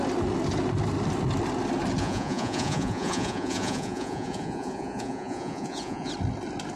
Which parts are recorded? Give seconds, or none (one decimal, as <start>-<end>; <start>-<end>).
0.0-2.0; 6.1-6.8